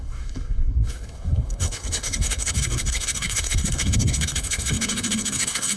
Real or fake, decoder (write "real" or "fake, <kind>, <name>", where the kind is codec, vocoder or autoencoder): fake, codec, SNAC